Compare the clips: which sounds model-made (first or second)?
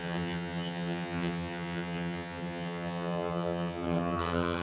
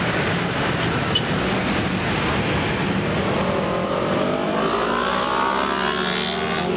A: first